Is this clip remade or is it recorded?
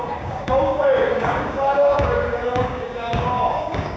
remade